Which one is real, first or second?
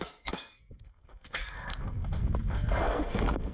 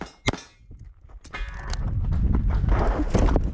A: second